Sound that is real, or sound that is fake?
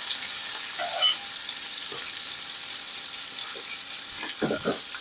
real